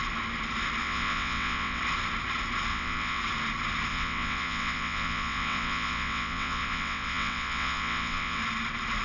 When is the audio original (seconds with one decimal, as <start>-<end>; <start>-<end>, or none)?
0.0-0.8; 1.8-2.7; 3.2-3.9; 8.4-9.0